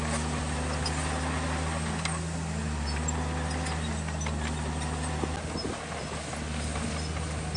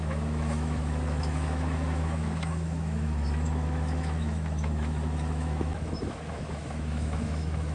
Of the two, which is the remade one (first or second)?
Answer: second